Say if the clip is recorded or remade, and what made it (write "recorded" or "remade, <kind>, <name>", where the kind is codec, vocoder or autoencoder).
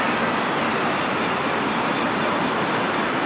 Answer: recorded